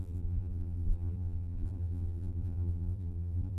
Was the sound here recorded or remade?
remade